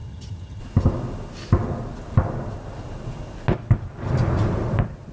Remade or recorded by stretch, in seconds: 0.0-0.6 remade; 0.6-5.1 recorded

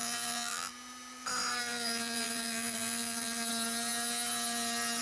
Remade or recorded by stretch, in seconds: 0.0-0.7 remade; 0.7-1.6 recorded; 1.6-3.5 remade; 3.5-5.0 recorded

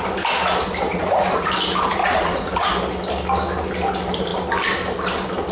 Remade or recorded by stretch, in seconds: 0.0-0.9 recorded; 0.9-1.5 remade; 1.5-2.0 recorded; 2.0-2.7 remade; 2.7-5.5 recorded

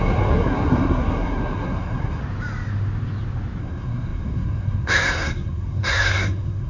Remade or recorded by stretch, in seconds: 0.0-2.2 remade; 2.2-3.6 recorded; 3.6-6.7 remade